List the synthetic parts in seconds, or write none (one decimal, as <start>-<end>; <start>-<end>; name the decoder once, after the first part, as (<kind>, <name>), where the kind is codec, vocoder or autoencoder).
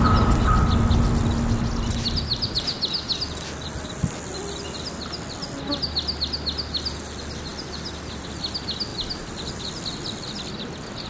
none